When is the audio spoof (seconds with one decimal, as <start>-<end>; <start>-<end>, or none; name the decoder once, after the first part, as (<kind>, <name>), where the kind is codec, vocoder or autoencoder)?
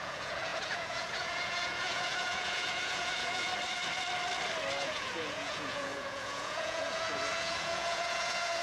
0.0-3.5 (vocoder, Vocos); 4.8-8.6